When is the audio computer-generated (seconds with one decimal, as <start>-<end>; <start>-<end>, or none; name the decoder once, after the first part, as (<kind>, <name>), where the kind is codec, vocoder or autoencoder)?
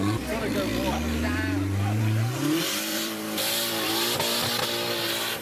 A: 2.9-3.9 (vocoder, BigVGAN v2)